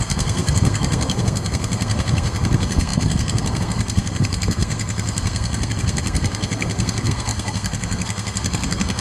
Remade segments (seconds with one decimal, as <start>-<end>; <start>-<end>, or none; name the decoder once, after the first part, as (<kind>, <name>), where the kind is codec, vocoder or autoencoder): 0.0-9.0 (codec, SNAC)